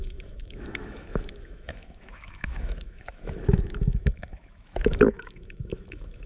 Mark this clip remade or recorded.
remade